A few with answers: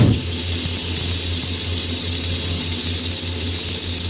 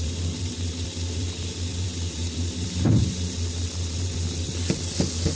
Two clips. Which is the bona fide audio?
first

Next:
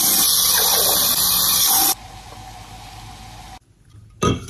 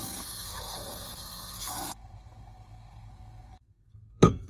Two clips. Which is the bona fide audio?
first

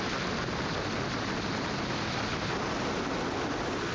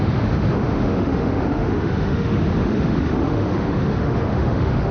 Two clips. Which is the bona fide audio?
first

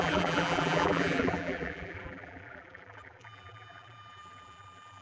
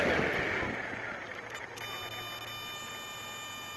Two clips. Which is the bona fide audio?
second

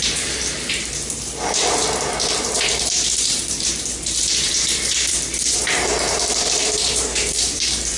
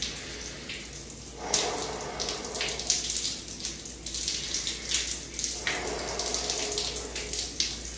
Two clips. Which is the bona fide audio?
second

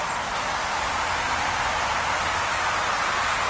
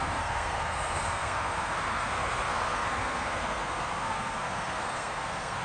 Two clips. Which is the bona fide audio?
first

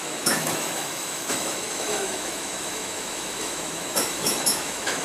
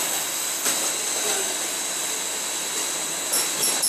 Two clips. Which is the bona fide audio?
second